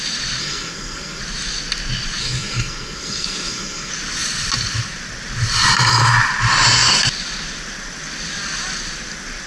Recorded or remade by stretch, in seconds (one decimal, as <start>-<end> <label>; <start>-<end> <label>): 0.0-0.4 recorded; 0.4-1.2 remade; 1.2-2.2 recorded; 2.2-3.9 remade; 3.9-9.5 recorded

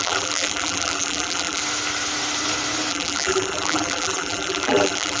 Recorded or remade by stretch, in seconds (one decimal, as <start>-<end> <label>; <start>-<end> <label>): 0.0-1.6 remade; 1.6-2.9 recorded; 2.9-5.2 remade

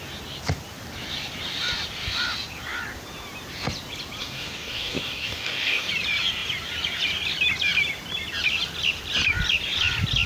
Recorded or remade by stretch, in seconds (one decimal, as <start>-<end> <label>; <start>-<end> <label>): 0.0-4.2 recorded; 4.2-5.9 remade; 5.9-10.3 recorded

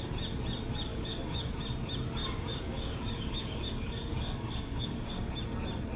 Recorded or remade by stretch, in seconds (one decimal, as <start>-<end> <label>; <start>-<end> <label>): 0.0-0.9 recorded; 0.9-1.5 remade; 1.5-2.2 recorded; 2.2-5.3 remade; 5.3-6.0 recorded